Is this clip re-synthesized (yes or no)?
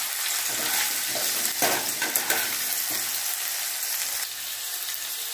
no